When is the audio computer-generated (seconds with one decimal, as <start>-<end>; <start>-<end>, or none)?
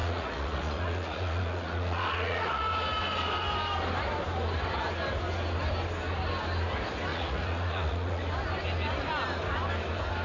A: 0.0-2.6; 7.1-8.2